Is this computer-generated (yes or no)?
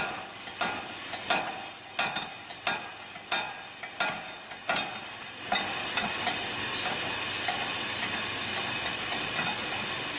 no